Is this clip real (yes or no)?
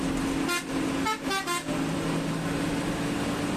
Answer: yes